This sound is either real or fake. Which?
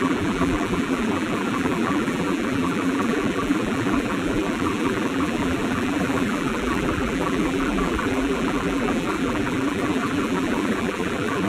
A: fake